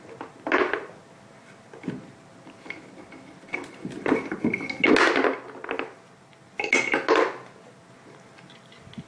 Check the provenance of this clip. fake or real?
real